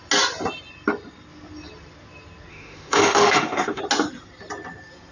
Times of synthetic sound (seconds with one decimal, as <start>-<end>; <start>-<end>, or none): 2.5-3.8

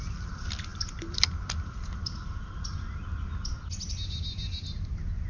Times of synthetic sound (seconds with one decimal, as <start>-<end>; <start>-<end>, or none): none

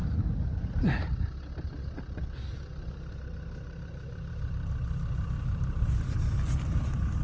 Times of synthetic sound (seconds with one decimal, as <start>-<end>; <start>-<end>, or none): none

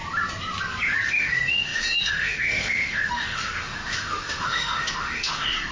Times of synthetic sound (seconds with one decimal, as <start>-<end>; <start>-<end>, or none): 1.1-5.7